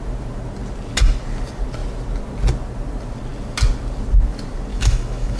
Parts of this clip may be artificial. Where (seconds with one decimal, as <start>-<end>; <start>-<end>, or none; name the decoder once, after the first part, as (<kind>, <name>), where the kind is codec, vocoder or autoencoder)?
4.7-5.4 (autoencoder, DAC-VAE)